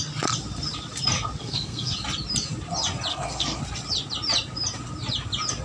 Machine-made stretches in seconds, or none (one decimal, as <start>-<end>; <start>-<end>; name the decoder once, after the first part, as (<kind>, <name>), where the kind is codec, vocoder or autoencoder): 1.4-1.9 (codec, SNAC); 3.1-3.6